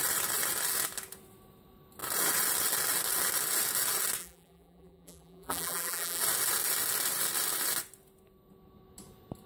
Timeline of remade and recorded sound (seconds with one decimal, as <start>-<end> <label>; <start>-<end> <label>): 0.0-4.2 recorded; 4.2-6.2 remade; 6.2-9.5 recorded